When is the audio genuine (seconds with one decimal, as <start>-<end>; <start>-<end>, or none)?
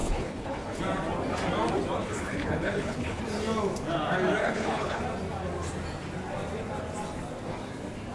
0.8-2.0; 3.2-4.4; 5.0-8.1